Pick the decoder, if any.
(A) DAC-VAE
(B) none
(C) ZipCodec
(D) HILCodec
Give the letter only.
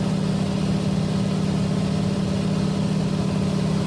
B